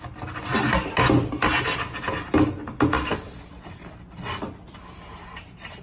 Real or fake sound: real